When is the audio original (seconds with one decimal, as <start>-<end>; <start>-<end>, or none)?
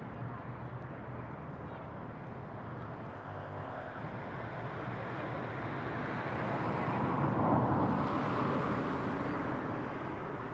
0.0-3.1; 4.0-10.5